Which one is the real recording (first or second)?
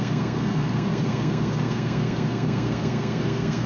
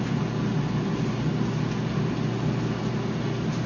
second